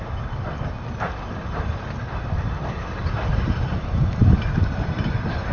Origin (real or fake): real